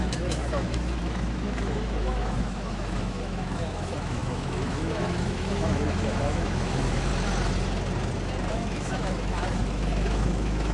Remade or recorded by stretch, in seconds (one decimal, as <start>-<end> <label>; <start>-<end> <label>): 0.0-7.1 remade; 7.1-8.5 recorded; 8.5-10.7 remade